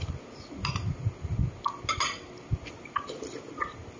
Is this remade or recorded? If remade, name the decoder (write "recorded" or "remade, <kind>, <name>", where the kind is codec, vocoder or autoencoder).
recorded